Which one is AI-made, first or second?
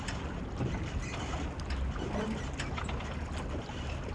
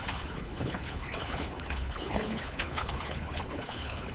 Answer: second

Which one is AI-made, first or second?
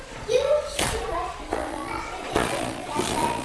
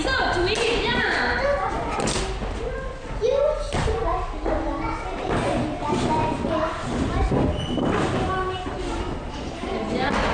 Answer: first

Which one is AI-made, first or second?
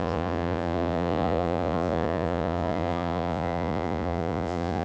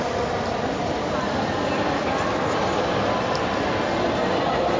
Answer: first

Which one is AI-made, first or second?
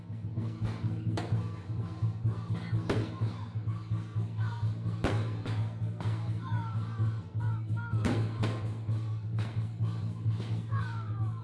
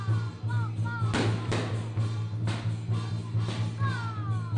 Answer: first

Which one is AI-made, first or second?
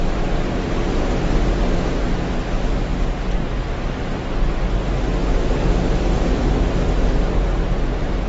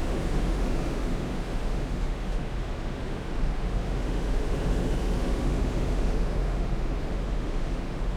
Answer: second